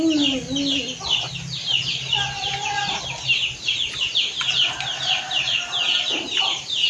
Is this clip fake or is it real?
real